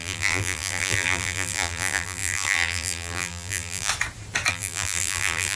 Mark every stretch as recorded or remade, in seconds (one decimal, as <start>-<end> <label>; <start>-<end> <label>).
0.0-3.9 remade; 3.9-4.5 recorded; 4.5-5.6 remade